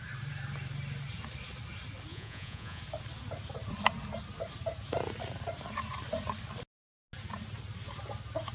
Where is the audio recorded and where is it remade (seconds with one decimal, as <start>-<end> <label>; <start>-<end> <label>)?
0.0-2.1 recorded; 2.1-2.8 remade; 2.8-8.5 recorded

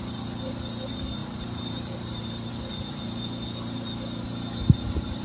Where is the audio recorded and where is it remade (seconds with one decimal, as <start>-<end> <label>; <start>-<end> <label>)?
0.0-1.2 recorded; 1.2-2.5 remade; 2.5-5.2 recorded

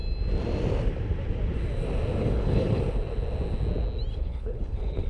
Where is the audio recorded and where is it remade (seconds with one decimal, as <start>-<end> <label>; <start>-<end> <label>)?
0.0-2.2 recorded; 2.2-2.8 remade; 2.8-4.1 recorded; 4.1-5.1 remade